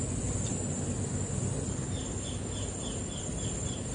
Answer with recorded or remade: recorded